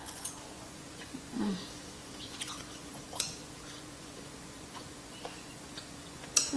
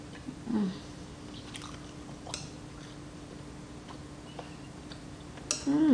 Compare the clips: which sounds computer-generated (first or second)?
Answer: first